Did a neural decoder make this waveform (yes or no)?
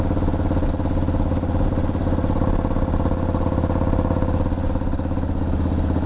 no